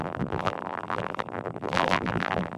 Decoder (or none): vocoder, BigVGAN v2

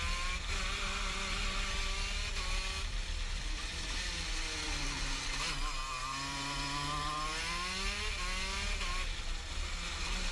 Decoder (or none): none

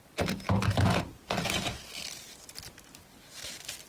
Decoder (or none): none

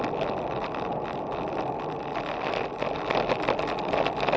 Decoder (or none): none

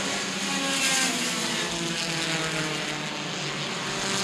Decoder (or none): none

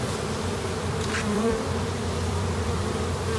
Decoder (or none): vocoder, BigVGAN v2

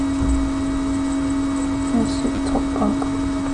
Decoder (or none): none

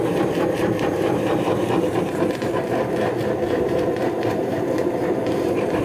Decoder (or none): vocoder, BigVGAN v2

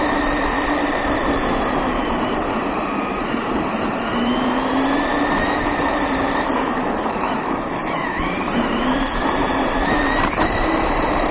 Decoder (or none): vocoder, BigVGAN v2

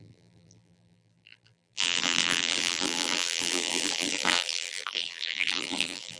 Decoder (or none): vocoder, BigVGAN v2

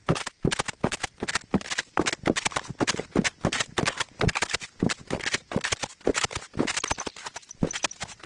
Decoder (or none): none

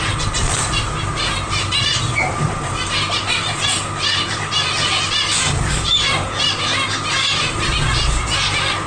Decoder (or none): vocoder, BigVGAN v2